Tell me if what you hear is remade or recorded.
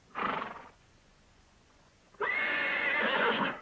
remade